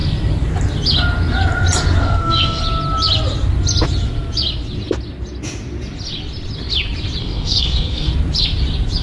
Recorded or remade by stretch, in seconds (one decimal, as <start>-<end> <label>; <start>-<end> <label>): 0.0-2.0 recorded; 2.0-2.6 remade; 2.6-7.2 recorded; 7.2-8.1 remade; 8.1-9.0 recorded